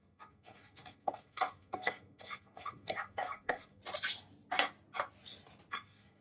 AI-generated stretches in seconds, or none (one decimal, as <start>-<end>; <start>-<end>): 0.0-3.8; 5.7-6.2